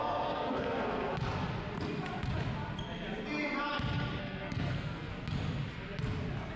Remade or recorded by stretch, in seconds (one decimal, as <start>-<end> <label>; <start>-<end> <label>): 0.0-1.1 remade; 1.1-4.2 recorded; 4.2-5.1 remade; 5.1-6.6 recorded